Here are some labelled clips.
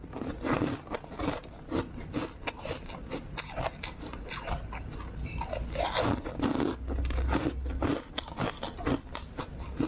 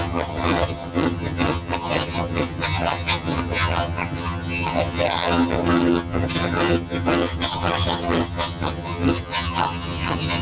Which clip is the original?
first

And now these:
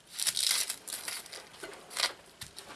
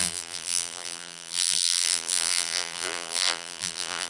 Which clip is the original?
first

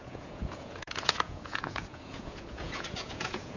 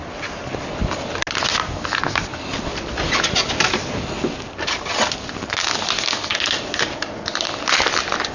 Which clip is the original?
second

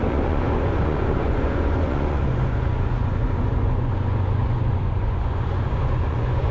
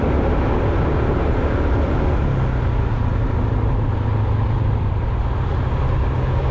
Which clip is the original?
second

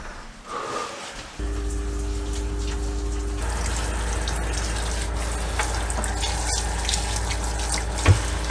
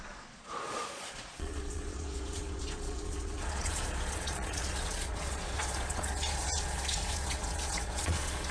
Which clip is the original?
first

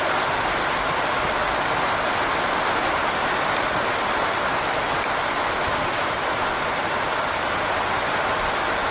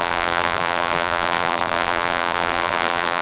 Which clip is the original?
first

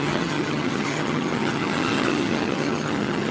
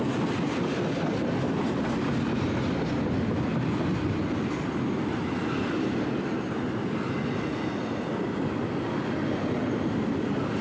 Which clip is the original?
second